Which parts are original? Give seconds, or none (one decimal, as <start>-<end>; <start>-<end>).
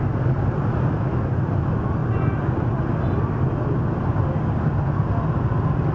0.0-5.9